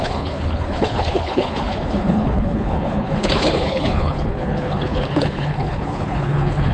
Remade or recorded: remade